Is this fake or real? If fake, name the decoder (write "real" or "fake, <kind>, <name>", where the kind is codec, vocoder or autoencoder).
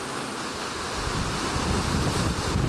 real